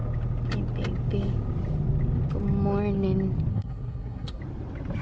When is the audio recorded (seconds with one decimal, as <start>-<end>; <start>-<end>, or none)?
0.0-3.5; 4.4-5.0